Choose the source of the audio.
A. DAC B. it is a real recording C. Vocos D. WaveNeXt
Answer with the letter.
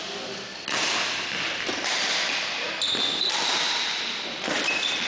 B